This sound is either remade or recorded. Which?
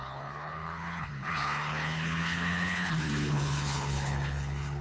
remade